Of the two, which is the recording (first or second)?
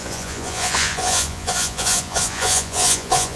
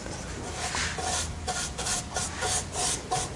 second